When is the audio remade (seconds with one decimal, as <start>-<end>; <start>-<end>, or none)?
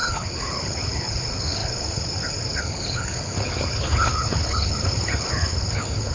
0.0-6.1